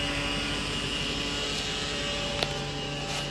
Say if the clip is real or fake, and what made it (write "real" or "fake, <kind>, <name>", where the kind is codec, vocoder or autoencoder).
real